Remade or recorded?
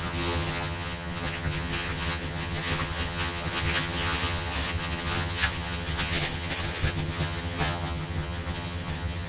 remade